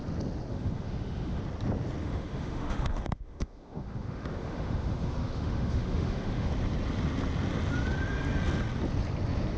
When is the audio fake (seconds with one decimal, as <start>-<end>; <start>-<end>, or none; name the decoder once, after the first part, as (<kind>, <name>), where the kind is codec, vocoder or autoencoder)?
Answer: 0.5-1.4 (autoencoder, DAC-VAE); 2.0-6.5